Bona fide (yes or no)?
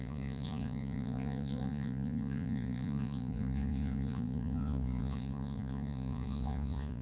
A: no